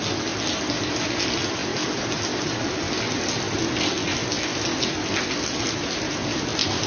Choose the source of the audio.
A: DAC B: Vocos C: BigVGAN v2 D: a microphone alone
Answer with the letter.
D